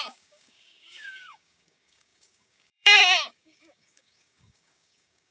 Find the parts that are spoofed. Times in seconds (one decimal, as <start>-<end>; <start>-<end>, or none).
0.0-5.3